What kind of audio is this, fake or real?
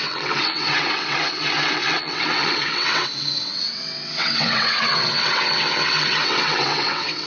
fake